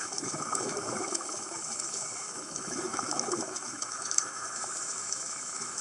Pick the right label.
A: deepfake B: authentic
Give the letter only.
A